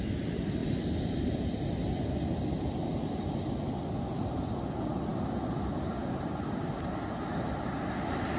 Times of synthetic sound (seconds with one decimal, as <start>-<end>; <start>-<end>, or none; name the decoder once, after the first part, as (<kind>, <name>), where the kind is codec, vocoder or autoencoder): none